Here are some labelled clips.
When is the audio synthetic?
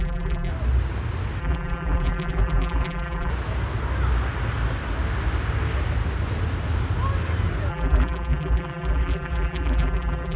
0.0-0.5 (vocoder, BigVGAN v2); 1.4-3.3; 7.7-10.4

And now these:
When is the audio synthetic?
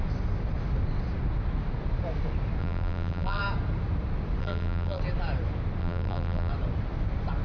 2.6-3.4 (vocoder, BigVGAN v2); 4.4-5.0; 5.8-6.5